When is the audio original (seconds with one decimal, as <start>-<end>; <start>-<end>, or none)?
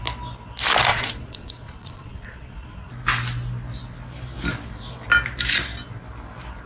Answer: 0.0-0.9; 2.9-6.7